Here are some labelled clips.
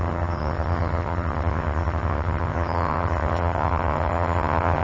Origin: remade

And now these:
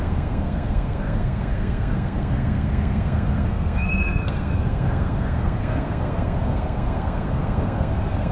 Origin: remade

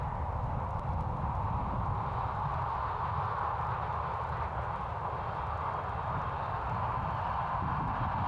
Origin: recorded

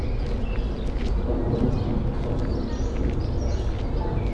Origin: recorded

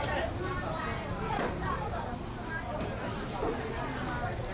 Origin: recorded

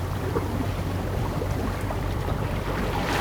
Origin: remade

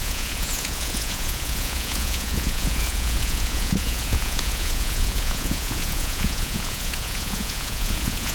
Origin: remade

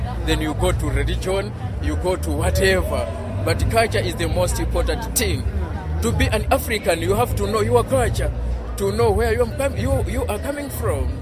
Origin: recorded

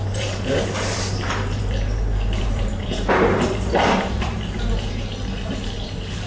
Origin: remade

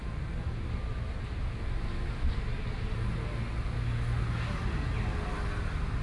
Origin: recorded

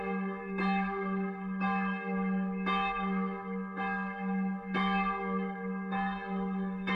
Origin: remade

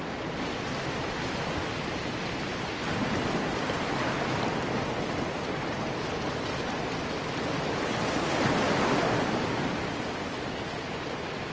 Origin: recorded